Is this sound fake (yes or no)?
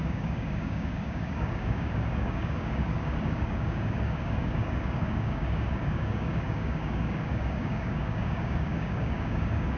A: yes